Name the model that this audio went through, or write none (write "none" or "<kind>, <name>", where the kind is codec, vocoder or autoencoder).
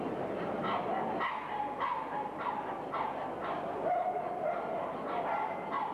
none